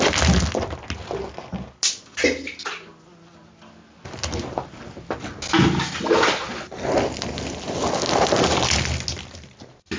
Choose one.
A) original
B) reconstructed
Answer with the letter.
A